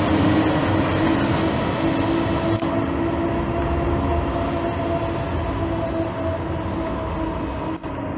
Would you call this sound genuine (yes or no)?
yes